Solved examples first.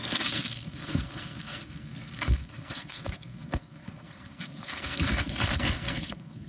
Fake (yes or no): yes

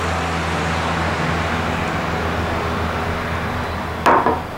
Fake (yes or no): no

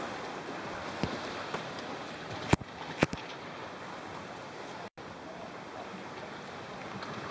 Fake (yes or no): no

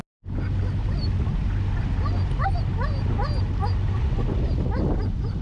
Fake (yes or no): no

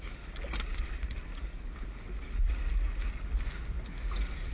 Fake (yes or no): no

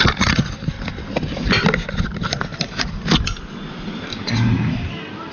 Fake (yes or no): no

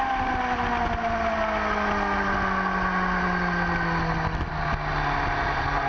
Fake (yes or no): no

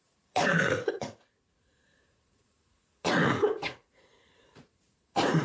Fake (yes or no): yes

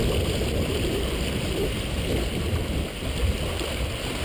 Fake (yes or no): no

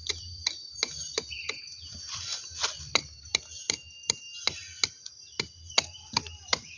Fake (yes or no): no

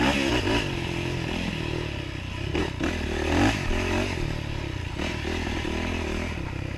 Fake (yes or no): no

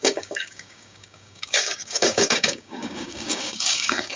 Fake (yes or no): yes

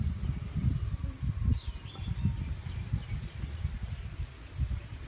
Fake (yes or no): no